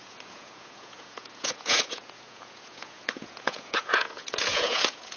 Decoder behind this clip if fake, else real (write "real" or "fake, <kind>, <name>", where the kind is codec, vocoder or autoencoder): fake, vocoder, Vocos